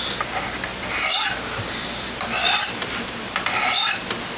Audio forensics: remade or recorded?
remade